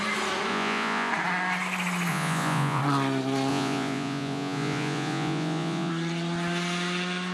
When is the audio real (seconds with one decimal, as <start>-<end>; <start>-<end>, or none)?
0.0-0.5; 1.1-2.1; 2.8-3.5; 5.9-7.3